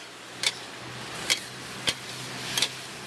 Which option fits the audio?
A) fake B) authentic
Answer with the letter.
B